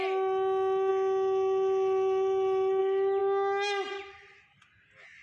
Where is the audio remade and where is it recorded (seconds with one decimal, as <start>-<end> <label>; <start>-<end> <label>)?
0.0-5.2 recorded